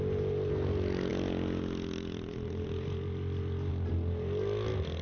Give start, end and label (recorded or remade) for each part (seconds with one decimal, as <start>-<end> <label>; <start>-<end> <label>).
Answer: 0.0-5.0 recorded